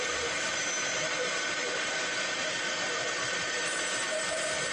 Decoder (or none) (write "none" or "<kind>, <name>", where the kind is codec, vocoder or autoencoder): vocoder, BigVGAN v2